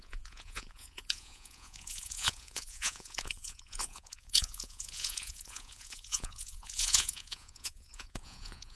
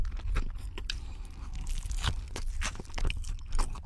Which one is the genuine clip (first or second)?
second